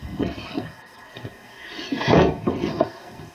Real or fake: fake